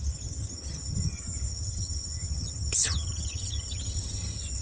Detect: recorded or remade remade